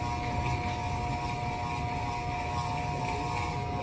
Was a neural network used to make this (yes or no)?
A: no